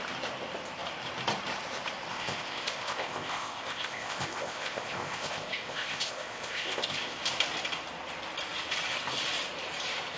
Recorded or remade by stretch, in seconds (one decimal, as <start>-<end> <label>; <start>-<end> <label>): 0.0-2.1 recorded; 2.1-7.2 remade; 7.2-10.2 recorded